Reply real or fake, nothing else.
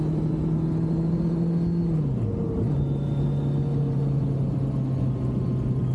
real